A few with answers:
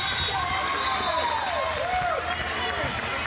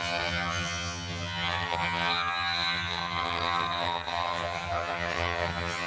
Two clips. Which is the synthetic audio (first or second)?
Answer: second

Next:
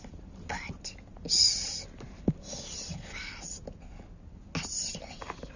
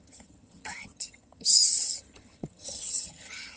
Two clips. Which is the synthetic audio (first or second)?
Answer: second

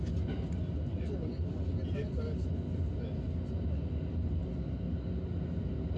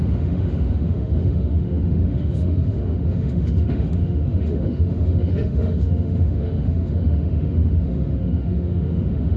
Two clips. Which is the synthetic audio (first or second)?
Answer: second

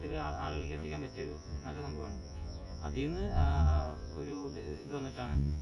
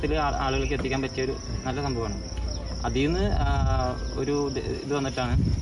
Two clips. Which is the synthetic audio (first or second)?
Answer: first